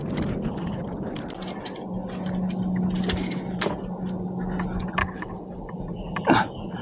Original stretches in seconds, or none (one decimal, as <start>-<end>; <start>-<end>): 0.0-5.0; 5.6-6.8